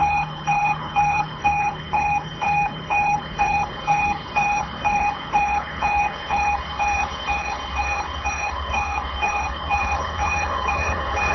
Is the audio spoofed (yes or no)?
yes